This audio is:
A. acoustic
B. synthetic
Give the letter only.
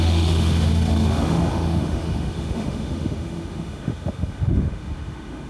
B